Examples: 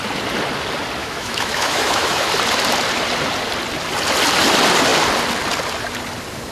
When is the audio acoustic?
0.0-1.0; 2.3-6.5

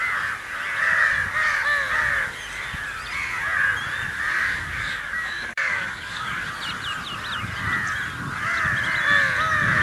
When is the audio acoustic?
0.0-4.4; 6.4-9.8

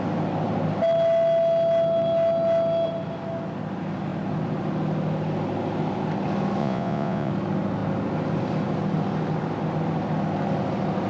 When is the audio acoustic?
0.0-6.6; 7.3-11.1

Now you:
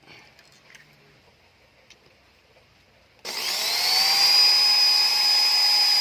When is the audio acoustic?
0.0-6.0

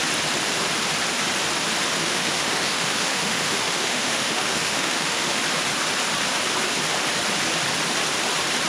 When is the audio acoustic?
0.0-2.0; 5.4-8.7